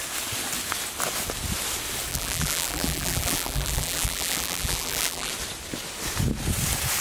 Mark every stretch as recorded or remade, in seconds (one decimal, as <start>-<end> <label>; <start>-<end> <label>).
0.0-2.1 recorded; 2.1-5.3 remade; 5.3-7.0 recorded